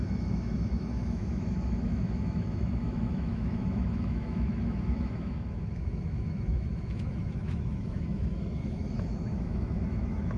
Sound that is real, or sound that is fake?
fake